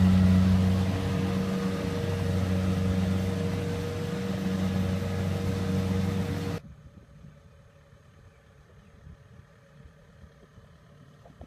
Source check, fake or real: real